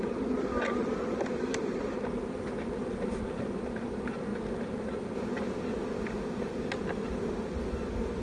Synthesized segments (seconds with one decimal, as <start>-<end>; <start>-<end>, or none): none